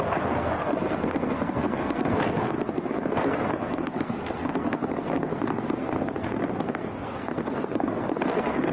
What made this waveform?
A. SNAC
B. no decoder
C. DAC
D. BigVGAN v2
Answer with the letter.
A